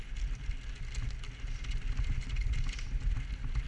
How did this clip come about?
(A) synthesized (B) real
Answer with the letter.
B